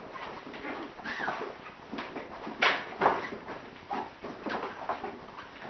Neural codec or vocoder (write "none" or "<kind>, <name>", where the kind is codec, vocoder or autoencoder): none